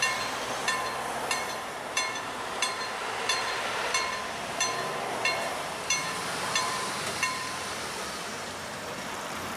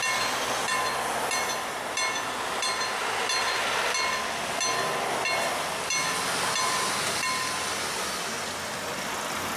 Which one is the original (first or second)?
second